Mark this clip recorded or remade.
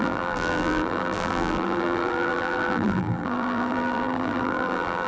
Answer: remade